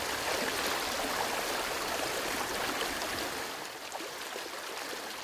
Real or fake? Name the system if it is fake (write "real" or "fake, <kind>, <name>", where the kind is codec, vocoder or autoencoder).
real